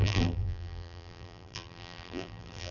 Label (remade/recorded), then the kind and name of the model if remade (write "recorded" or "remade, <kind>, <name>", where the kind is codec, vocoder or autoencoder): remade, vocoder, BigVGAN v2